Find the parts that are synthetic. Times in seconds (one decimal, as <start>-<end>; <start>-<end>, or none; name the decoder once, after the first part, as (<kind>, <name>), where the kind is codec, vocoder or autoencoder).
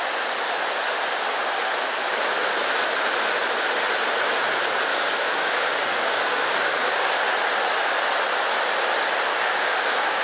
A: 4.9-7.1 (codec, DAC); 9.3-10.2